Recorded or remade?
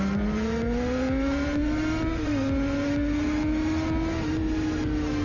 recorded